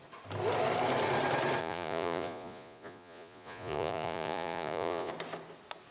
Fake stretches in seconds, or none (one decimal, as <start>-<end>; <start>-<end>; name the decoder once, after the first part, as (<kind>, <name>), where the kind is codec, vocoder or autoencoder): 1.6-5.1 (vocoder, Vocos)